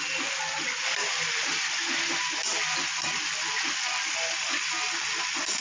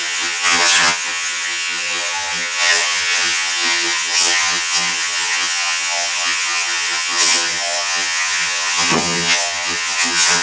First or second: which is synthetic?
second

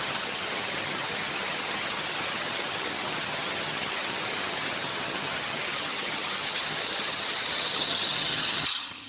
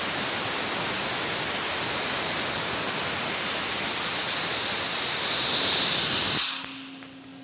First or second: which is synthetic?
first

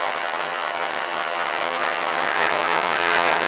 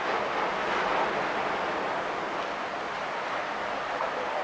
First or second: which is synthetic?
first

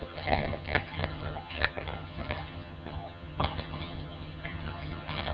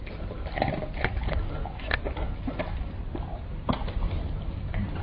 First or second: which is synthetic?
first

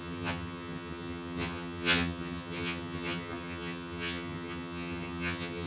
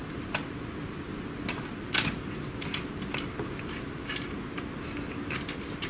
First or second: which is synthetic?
first